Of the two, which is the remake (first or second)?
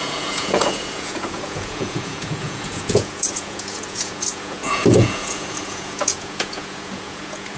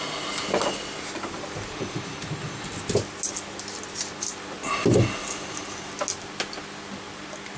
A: first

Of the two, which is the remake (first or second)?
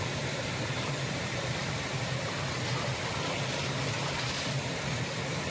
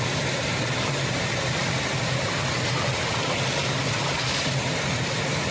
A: first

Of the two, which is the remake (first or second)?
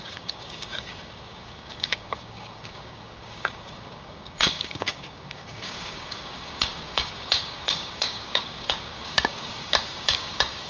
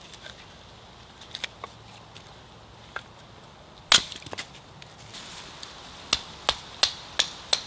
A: first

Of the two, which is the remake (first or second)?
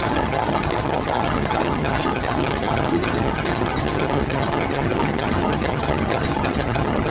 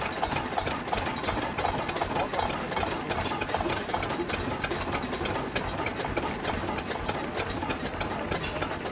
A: first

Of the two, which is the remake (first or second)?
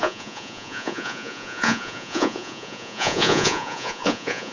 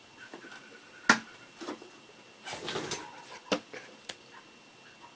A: first